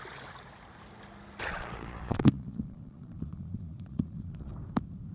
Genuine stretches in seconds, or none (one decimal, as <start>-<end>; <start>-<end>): 0.0-1.5; 4.5-5.1